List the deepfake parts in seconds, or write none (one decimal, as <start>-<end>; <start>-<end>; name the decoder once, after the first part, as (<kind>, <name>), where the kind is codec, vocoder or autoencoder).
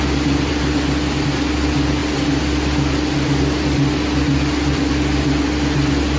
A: none